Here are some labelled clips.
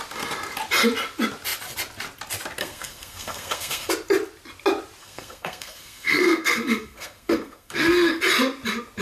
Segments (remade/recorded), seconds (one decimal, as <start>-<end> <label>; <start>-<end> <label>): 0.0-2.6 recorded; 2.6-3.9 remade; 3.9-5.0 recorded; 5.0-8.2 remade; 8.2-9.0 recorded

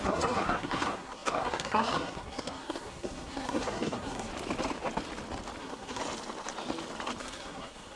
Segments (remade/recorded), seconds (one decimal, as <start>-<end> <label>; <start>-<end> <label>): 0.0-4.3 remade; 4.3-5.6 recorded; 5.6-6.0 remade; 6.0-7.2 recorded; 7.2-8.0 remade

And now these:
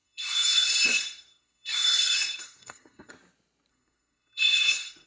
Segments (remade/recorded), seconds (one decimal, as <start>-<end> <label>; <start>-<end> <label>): 0.0-3.1 remade; 3.1-3.7 recorded; 3.7-5.1 remade

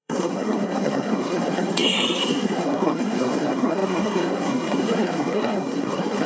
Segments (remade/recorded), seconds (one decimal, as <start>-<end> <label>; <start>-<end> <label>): 0.0-6.3 remade

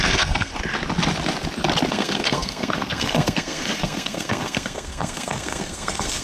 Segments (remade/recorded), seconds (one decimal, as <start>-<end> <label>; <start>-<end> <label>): 0.0-0.5 remade; 0.5-1.9 recorded; 1.9-6.2 remade

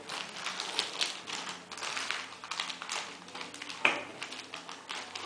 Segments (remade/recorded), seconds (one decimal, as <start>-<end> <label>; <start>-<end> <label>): 0.0-5.3 recorded

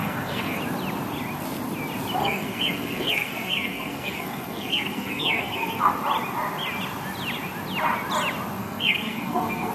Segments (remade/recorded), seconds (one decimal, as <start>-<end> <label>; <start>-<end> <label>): 0.0-0.6 remade; 0.6-2.2 recorded; 2.2-5.9 remade; 5.9-8.6 recorded; 8.6-9.7 remade

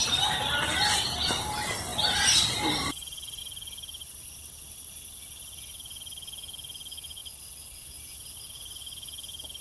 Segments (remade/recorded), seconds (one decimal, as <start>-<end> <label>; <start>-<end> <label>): 0.0-9.6 recorded